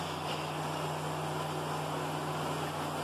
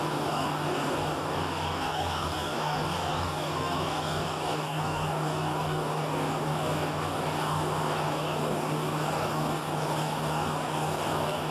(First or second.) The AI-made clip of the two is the second